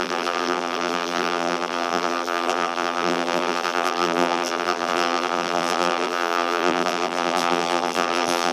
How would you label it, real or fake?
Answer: fake